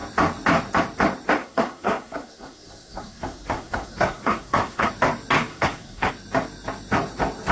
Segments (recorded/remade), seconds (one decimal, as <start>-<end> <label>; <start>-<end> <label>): 0.0-1.4 recorded; 1.4-4.9 remade; 4.9-5.5 recorded; 5.5-6.1 remade; 6.1-7.5 recorded